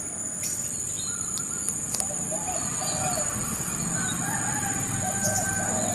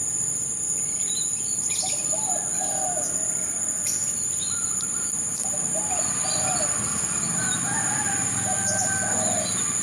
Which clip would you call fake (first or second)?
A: first